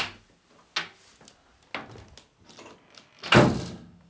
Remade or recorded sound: recorded